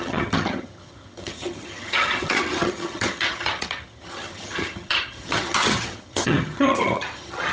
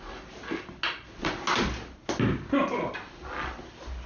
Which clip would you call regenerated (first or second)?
first